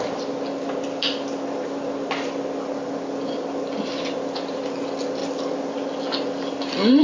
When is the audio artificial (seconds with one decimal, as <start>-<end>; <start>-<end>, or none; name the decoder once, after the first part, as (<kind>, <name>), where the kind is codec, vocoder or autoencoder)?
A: none